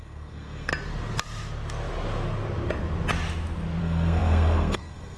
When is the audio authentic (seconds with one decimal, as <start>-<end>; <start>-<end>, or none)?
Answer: 0.7-3.8